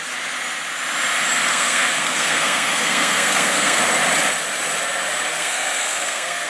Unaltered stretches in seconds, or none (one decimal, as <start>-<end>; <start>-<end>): 0.0-1.5; 3.8-5.3